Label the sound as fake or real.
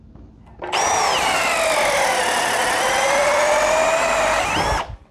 real